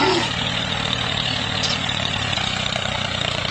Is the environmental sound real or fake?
fake